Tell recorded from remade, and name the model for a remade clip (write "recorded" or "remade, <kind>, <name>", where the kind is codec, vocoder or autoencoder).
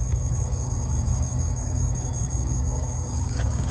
remade, codec, DAC